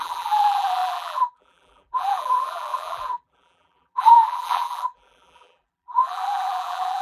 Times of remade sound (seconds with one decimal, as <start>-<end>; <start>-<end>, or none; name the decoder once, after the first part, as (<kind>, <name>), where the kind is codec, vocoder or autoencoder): 0.0-7.0 (vocoder, BigVGAN v2)